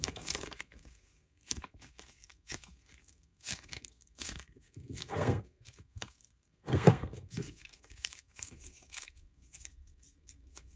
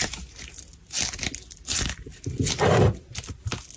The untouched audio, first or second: second